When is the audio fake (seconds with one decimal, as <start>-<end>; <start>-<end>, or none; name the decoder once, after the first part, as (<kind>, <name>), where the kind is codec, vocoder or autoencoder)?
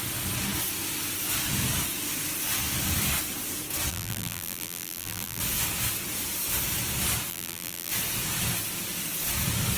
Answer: 3.9-5.4 (vocoder, BigVGAN v2); 7.3-7.9